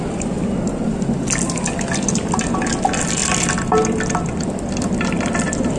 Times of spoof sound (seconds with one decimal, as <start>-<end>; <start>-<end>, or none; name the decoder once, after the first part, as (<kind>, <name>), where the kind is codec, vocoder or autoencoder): 3.2-5.8 (vocoder, BigVGAN v2)